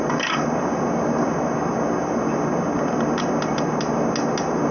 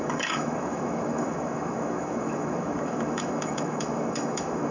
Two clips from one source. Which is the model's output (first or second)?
second